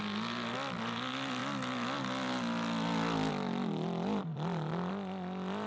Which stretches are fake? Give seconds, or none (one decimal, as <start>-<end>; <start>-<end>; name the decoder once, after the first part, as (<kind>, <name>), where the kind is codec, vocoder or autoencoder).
none